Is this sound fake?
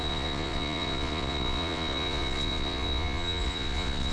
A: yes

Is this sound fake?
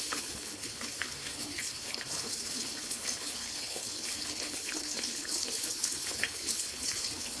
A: yes